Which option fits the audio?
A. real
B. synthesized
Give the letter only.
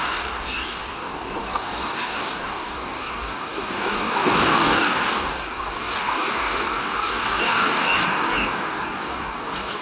B